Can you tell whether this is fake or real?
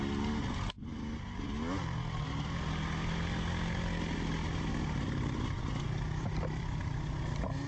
real